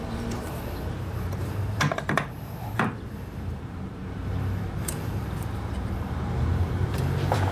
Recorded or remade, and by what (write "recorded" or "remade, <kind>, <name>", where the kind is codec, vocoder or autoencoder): remade, vocoder, BigVGAN v2